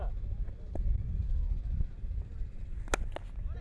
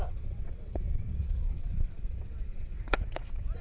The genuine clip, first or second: first